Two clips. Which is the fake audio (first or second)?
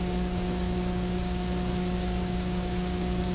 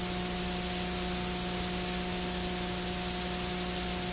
first